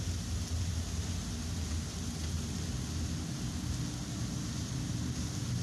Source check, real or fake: real